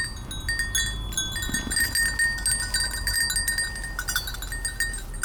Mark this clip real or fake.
real